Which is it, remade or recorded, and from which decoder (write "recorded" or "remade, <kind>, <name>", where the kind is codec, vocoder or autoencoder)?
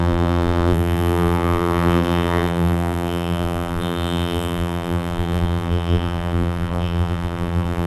remade, vocoder, BigVGAN v2